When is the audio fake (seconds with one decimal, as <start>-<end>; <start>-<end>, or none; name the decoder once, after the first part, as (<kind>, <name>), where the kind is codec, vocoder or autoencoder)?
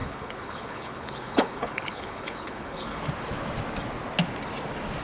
0.0-3.0 (codec, HILCodec)